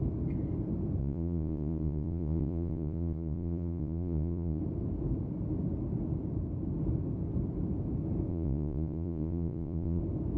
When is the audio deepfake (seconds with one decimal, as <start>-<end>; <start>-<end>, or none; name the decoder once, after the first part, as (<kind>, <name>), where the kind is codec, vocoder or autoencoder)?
1.0-4.6 (vocoder, Vocos); 8.3-10.0